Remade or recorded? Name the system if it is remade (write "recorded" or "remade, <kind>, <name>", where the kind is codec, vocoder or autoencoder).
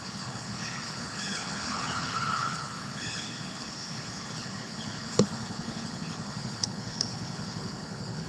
remade, codec, HILCodec